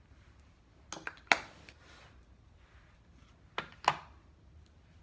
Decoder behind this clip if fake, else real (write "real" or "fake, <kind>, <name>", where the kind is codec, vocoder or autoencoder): real